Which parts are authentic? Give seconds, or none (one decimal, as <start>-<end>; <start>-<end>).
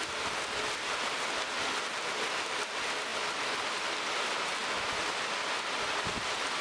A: 0.0-6.6